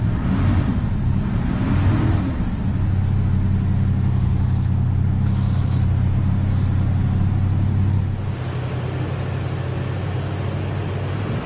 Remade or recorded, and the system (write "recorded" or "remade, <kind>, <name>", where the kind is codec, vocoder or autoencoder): recorded